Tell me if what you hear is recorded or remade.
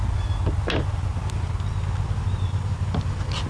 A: recorded